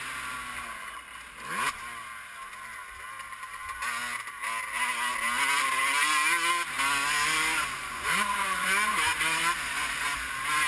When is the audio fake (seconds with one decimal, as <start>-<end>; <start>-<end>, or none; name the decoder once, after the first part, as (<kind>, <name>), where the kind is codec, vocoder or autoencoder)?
7.8-9.9 (vocoder, Vocos)